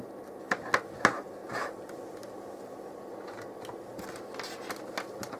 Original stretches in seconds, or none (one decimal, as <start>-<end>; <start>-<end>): 0.0-5.4